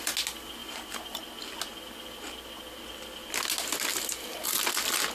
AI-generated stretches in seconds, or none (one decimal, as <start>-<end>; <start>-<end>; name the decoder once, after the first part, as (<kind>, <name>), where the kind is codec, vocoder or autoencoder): 0.6-1.2 (vocoder, BigVGAN v2)